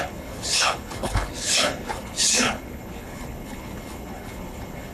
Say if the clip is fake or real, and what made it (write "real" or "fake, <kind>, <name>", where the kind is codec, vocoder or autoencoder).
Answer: fake, codec, HILCodec